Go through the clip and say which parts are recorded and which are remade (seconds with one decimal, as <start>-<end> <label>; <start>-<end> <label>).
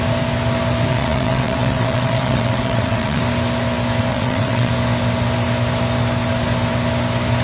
0.0-0.9 recorded; 0.9-3.2 remade; 3.2-4.1 recorded; 4.1-4.7 remade; 4.7-7.4 recorded